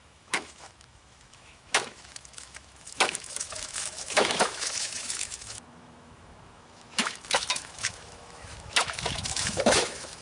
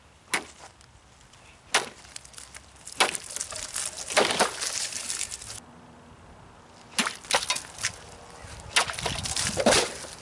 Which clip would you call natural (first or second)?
second